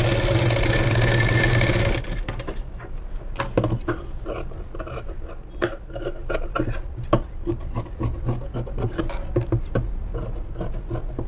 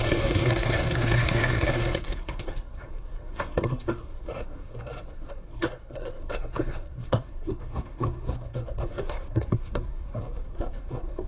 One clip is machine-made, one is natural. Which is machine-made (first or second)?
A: second